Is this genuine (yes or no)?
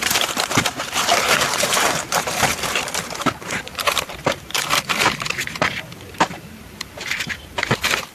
no